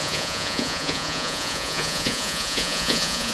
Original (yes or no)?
no